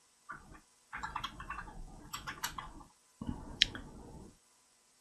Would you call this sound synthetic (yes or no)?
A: yes